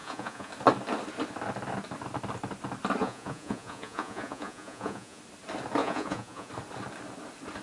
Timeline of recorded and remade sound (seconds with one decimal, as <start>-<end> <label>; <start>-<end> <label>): 0.0-0.5 remade; 0.5-3.0 recorded; 3.0-5.2 remade; 5.2-5.8 recorded; 5.8-6.5 remade; 6.5-7.6 recorded